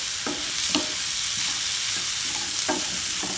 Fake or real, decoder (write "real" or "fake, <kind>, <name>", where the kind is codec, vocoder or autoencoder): real